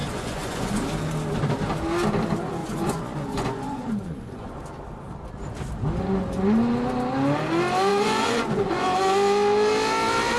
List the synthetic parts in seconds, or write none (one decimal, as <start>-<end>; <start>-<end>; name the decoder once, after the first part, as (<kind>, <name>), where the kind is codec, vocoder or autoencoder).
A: 0.0-0.8 (vocoder, Vocos); 2.6-4.6; 7.9-9.0